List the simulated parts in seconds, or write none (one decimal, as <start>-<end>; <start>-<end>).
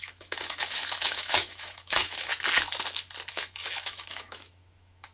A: 0.0-2.3; 3.3-5.1